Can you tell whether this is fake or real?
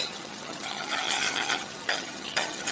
fake